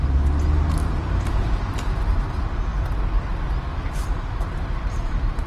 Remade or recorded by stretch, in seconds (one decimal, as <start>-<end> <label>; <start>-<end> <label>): 0.0-0.8 recorded; 0.8-2.0 remade; 2.0-3.7 recorded; 3.7-5.5 remade

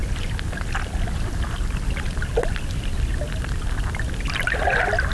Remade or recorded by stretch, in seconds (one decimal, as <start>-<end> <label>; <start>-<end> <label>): 0.0-5.1 recorded

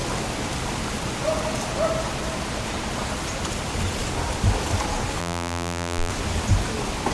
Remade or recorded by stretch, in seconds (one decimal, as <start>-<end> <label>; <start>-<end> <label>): 0.0-5.2 recorded; 5.2-6.1 remade; 6.1-7.1 recorded